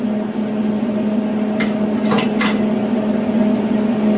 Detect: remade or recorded recorded